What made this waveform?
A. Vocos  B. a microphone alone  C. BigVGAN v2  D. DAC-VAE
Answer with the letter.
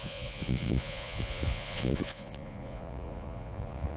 A